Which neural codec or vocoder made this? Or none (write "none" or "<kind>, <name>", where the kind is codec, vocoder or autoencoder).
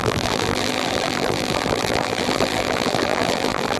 vocoder, BigVGAN v2